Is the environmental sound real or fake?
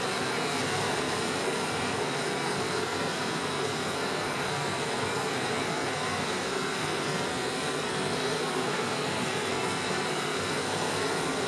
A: fake